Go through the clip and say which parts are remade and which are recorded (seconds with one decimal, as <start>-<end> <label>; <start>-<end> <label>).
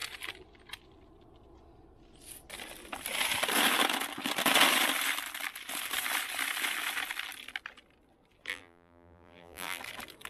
0.0-8.5 recorded; 8.5-9.8 remade; 9.8-10.3 recorded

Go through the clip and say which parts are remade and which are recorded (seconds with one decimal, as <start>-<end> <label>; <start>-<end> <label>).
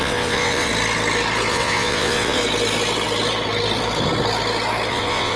0.0-0.7 remade; 0.7-1.5 recorded; 1.5-2.4 remade; 2.4-4.9 recorded; 4.9-5.4 remade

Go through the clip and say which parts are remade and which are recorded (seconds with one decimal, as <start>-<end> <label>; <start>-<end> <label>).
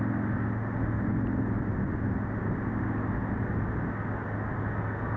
0.0-5.2 recorded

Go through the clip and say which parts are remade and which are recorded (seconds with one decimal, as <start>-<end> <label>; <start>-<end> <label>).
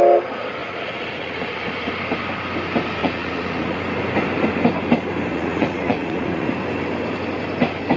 0.0-0.6 recorded; 0.6-1.9 remade; 1.9-3.0 recorded; 3.0-3.8 remade; 3.8-5.3 recorded; 5.3-6.5 remade; 6.5-8.0 recorded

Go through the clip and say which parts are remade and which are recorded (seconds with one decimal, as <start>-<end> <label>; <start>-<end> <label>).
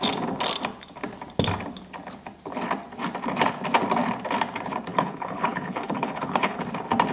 0.0-4.9 recorded; 4.9-6.6 remade; 6.6-7.1 recorded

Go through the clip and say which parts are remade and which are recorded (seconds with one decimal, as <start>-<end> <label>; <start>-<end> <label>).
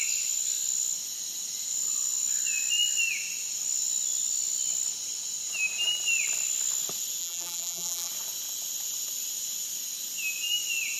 0.0-7.2 recorded; 7.2-8.1 remade; 8.1-11.0 recorded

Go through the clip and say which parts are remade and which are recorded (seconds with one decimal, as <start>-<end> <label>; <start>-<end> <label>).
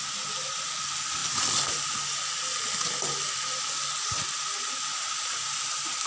0.0-6.1 recorded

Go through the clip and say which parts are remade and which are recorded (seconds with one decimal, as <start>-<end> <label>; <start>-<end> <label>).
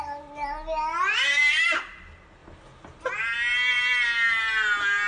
0.0-5.1 recorded